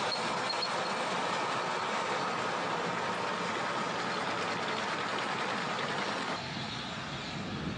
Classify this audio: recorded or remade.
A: recorded